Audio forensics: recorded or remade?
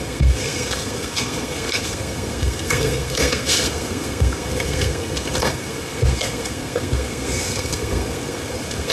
remade